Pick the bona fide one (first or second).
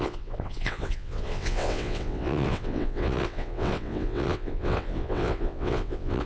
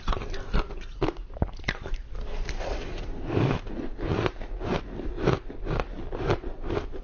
second